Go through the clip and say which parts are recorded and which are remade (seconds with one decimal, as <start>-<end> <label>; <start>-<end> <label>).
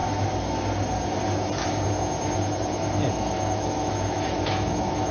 0.0-3.1 recorded; 3.1-5.1 remade